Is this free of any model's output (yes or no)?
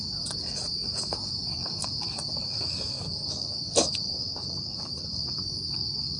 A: no